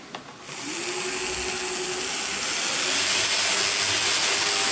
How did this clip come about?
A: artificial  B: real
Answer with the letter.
B